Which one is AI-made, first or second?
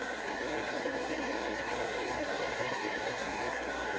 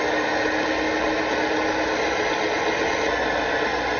first